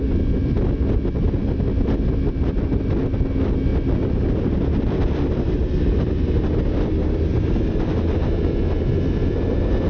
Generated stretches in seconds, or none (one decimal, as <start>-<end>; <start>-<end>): none

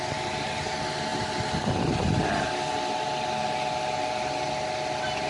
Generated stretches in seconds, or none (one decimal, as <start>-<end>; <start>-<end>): none